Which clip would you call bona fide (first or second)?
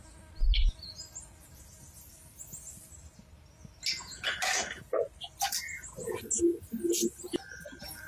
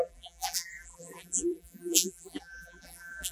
first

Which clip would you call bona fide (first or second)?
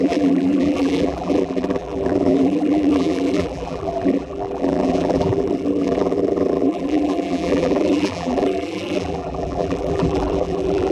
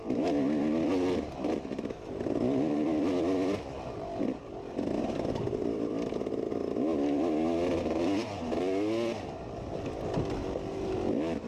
second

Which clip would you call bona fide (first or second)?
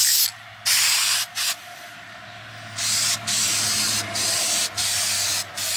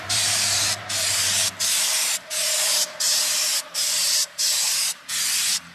first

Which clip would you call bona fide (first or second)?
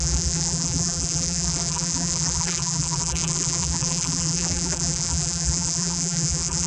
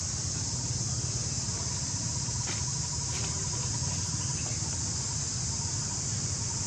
second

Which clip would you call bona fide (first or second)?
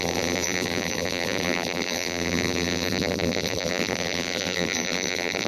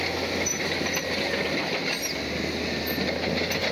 second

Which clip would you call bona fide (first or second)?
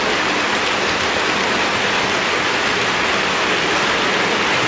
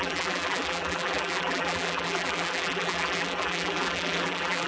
first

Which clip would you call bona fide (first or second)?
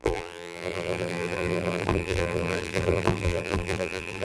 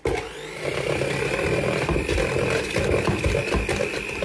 second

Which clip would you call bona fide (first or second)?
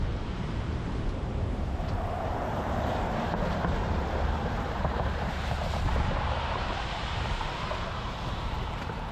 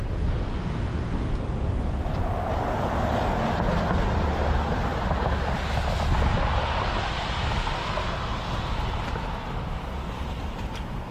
second